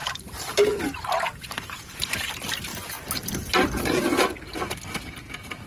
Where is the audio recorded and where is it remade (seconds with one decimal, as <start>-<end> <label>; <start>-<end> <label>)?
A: 0.0-2.3 remade; 2.3-5.7 recorded

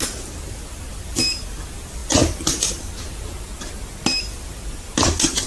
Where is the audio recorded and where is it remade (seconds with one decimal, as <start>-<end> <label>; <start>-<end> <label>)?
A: 0.0-5.5 recorded

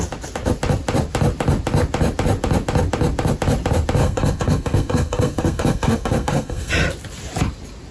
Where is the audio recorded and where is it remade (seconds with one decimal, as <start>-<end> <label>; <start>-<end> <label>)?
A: 0.0-4.0 recorded; 4.0-6.7 remade; 6.7-7.9 recorded